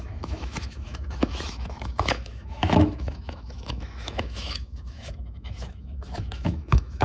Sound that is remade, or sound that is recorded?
remade